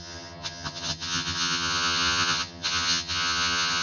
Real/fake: fake